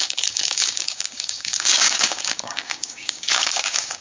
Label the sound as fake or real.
fake